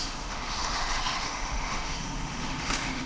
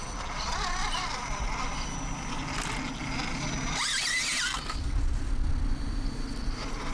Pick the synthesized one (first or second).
first